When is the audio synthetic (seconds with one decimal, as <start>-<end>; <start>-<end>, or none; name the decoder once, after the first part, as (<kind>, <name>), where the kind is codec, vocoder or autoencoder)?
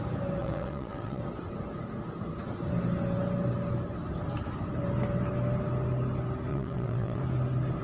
0.4-1.2 (vocoder, WaveNeXt); 6.5-7.2